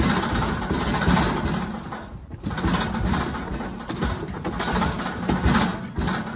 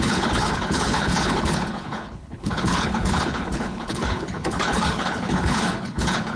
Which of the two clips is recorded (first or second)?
first